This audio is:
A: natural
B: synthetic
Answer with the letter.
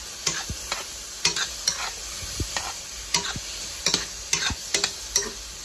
A